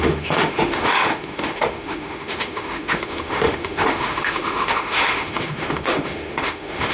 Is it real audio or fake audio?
fake